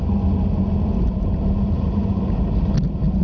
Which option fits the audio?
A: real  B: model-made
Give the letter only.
A